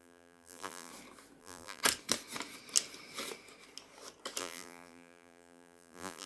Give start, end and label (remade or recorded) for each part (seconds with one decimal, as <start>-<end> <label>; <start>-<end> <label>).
0.0-0.9 remade; 0.9-1.4 recorded; 1.4-1.8 remade; 1.8-4.4 recorded; 4.4-6.3 remade